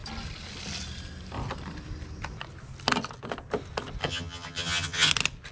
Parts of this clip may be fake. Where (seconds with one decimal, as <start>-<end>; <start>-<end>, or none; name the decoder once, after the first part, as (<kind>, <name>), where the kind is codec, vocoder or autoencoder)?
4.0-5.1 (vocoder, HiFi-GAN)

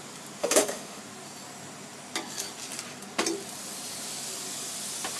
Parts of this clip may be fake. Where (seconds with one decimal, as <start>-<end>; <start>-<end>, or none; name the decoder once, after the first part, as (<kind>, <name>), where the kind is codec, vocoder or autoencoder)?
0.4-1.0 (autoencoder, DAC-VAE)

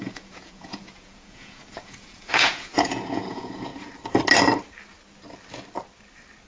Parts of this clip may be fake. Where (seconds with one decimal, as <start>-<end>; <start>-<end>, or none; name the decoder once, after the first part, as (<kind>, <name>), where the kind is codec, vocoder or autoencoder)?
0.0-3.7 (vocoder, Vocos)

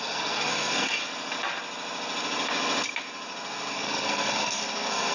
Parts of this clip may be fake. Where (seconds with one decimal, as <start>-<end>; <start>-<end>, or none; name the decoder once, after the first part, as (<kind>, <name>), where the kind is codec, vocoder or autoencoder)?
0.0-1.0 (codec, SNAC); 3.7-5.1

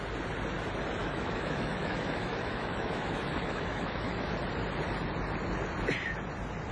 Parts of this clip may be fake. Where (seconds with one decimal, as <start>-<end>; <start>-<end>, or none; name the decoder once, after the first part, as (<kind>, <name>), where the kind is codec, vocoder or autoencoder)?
1.0-4.3 (autoencoder, DAC-VAE)

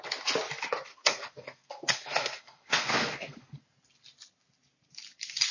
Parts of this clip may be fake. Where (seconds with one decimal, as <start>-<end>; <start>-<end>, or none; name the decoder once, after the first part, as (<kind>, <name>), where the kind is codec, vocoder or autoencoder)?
0.9-3.6 (codec, SNAC)